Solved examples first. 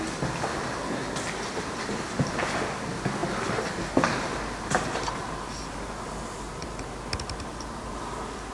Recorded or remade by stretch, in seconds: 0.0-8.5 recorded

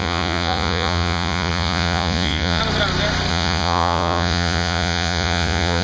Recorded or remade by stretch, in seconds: 0.0-2.6 remade; 2.6-3.3 recorded; 3.3-5.8 remade

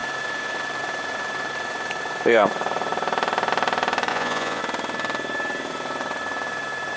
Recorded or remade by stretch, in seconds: 0.0-4.1 recorded; 4.1-4.6 remade; 4.6-7.0 recorded

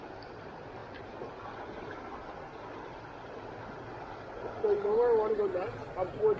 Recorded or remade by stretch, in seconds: 0.0-6.4 recorded

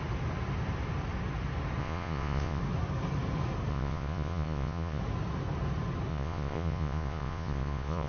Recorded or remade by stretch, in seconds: 0.0-1.8 recorded; 1.8-2.6 remade; 2.6-3.7 recorded; 3.7-5.0 remade; 5.0-6.1 recorded; 6.1-8.1 remade

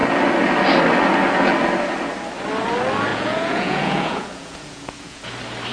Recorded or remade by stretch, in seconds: 0.0-3.1 recorded; 3.1-5.3 remade; 5.3-5.7 recorded

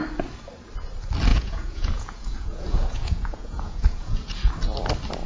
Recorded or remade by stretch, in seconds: 0.0-1.3 recorded; 1.3-4.5 remade; 4.5-5.3 recorded

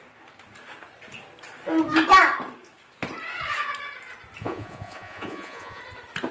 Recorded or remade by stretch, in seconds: 0.0-4.4 recorded; 4.4-5.8 remade; 5.8-6.3 recorded